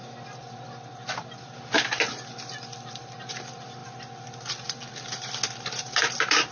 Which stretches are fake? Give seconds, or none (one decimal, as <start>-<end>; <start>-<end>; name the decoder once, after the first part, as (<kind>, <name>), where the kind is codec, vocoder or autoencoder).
none